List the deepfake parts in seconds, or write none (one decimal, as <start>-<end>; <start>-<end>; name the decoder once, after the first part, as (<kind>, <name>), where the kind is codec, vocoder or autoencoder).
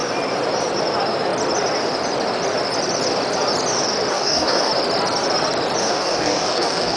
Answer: 4.1-4.7 (codec, DAC); 5.8-7.0